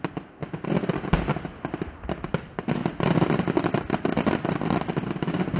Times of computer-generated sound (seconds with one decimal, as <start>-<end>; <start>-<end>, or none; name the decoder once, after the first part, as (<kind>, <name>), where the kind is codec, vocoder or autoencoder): none